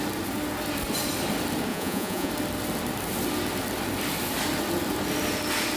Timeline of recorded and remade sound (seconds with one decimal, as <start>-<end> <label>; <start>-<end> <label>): 0.0-1.7 recorded; 1.7-2.3 remade; 2.3-5.8 recorded